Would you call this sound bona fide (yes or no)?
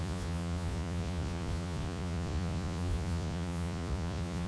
no